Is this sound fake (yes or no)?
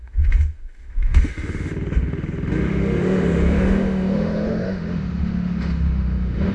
yes